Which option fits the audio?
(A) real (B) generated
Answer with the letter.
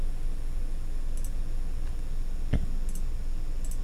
A